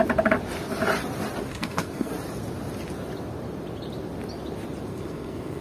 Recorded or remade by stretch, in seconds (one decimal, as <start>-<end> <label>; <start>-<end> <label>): 0.0-1.5 recorded; 1.5-2.1 remade; 2.1-4.9 recorded; 4.9-5.6 remade